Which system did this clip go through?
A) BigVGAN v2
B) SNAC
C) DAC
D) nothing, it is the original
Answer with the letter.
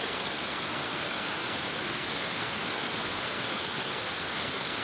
B